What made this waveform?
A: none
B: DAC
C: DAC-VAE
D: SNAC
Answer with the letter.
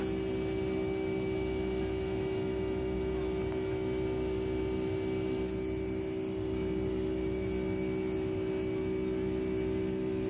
A